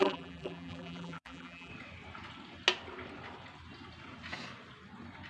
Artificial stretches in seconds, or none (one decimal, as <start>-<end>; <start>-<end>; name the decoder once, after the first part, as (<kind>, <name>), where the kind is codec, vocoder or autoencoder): 0.0-1.7 (vocoder, BigVGAN v2)